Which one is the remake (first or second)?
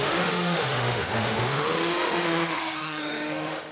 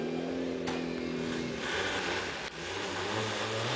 first